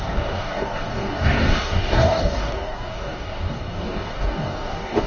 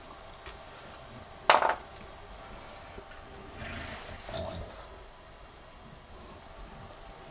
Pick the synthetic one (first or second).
first